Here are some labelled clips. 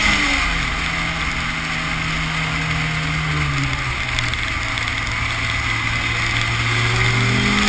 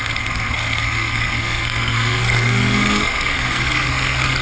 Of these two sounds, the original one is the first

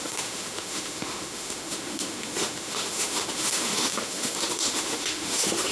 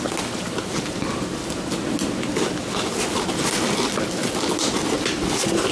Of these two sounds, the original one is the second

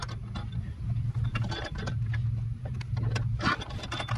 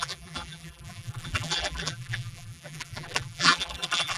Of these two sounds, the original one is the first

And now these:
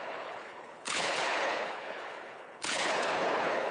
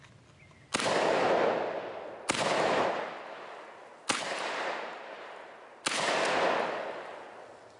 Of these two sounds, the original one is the second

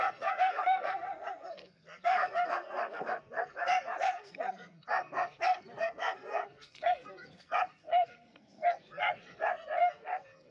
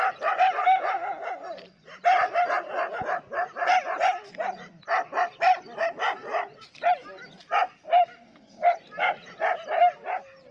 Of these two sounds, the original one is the second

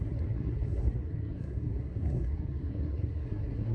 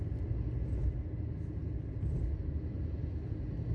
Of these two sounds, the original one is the second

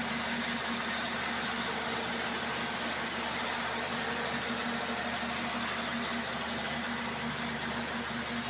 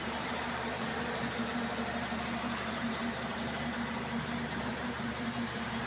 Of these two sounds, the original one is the first